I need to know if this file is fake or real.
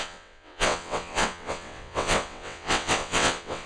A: fake